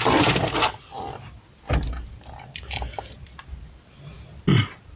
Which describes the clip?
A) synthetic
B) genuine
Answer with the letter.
B